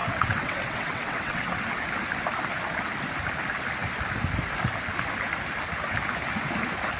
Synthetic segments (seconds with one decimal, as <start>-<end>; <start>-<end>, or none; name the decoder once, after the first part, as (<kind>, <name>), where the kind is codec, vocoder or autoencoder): 0.0-1.6 (vocoder, WaveNeXt)